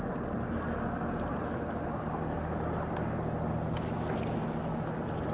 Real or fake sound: real